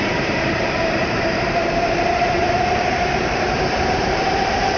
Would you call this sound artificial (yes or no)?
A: yes